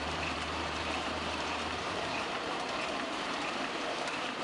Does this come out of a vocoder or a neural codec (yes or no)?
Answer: yes